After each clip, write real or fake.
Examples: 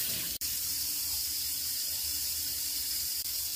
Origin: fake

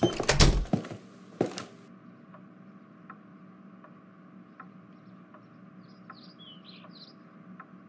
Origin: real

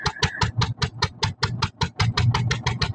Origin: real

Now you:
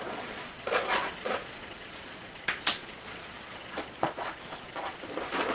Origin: fake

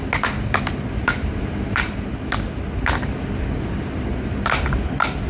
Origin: real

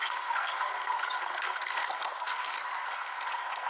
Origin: fake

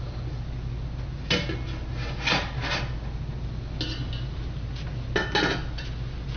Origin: real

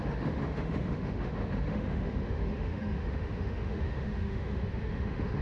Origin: fake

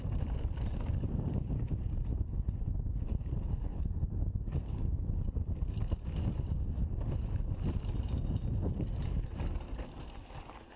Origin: real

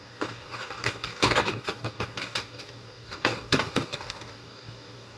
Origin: fake